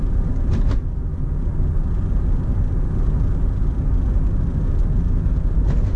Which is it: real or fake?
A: real